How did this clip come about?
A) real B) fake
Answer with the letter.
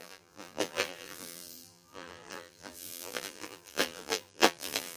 B